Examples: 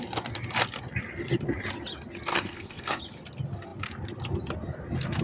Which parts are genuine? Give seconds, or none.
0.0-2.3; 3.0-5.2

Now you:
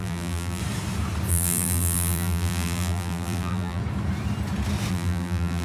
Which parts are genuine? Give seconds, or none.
0.6-1.3; 3.8-4.9